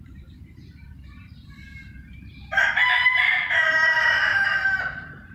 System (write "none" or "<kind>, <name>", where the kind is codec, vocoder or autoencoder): vocoder, BigVGAN v2